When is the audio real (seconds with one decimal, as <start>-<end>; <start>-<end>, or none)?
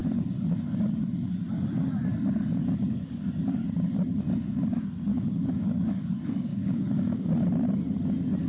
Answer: 0.0-5.1; 5.9-6.5; 7.3-8.5